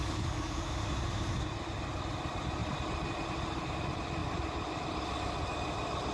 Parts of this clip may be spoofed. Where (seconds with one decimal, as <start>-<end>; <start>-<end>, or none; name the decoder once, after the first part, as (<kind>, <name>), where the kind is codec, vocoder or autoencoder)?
0.0-0.8 (codec, DAC)